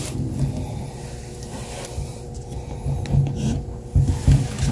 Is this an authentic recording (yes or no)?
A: yes